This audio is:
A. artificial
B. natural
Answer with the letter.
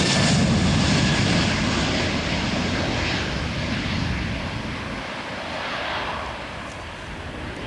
B